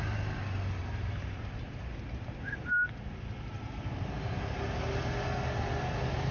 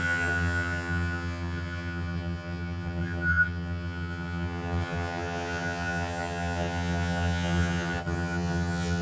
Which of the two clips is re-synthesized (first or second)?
second